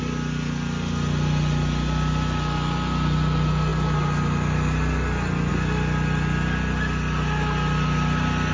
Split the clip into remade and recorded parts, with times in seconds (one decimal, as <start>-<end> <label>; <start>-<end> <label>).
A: 0.0-8.5 recorded